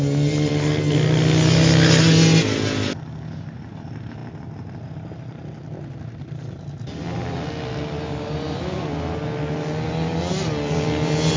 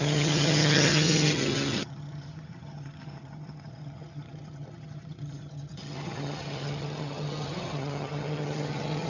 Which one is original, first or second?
first